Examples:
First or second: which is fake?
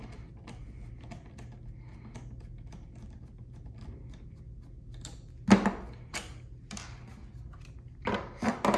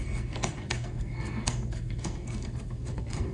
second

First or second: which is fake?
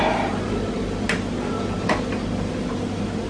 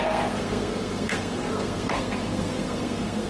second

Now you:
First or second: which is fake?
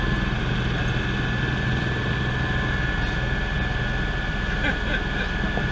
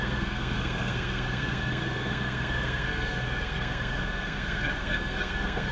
second